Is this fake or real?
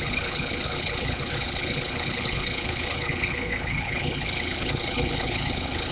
fake